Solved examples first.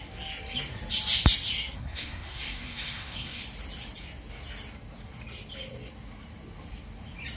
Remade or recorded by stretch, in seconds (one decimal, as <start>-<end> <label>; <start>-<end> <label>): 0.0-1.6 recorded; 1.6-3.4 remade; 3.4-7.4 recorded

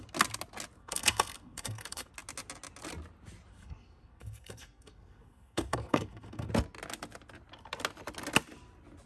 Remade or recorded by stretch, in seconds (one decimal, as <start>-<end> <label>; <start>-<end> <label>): 0.0-0.8 recorded; 0.8-2.1 remade; 2.1-3.5 recorded; 3.5-6.5 remade; 6.5-9.1 recorded

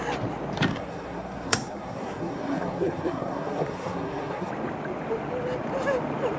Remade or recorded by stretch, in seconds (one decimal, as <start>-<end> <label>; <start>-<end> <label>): 0.0-0.7 recorded; 0.7-4.5 remade; 4.5-6.4 recorded

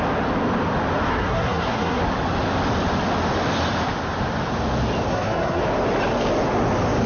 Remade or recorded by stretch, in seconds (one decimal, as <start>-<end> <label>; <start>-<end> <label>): 0.0-1.1 recorded; 1.1-2.0 remade; 2.0-5.1 recorded; 5.1-5.6 remade; 5.6-7.1 recorded

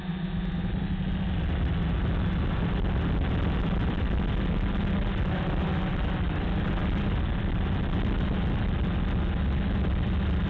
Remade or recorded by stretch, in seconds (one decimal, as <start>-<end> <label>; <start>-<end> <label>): 0.0-10.5 recorded

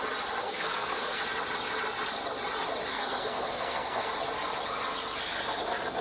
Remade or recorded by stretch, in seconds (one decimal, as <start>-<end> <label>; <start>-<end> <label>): 0.0-0.4 recorded; 0.4-1.2 remade; 1.2-2.9 recorded; 2.9-4.1 remade; 4.1-6.0 recorded

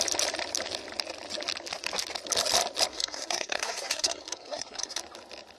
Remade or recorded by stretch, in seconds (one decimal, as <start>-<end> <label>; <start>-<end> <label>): 0.0-2.9 recorded; 2.9-5.0 remade; 5.0-5.6 recorded